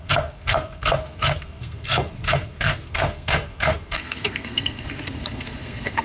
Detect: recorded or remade remade